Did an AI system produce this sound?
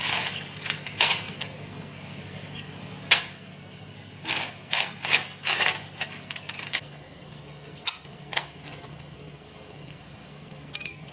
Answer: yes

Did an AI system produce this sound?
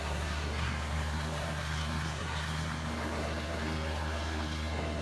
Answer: yes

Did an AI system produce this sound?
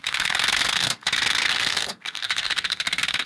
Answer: yes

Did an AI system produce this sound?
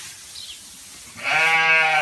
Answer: no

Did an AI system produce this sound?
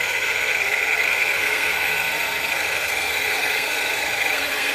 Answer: yes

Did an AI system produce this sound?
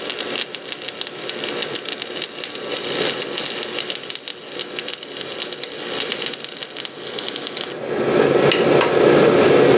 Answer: no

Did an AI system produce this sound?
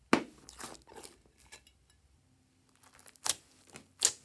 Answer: no